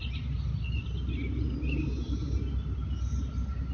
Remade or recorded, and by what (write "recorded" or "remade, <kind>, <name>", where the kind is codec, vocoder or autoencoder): recorded